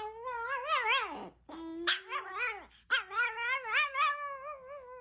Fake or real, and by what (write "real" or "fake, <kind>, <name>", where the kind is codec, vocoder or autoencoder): real